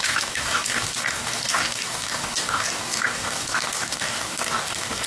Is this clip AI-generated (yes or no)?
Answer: yes